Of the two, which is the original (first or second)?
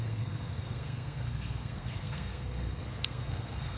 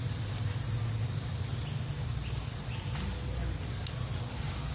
second